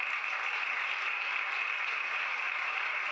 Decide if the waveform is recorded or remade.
remade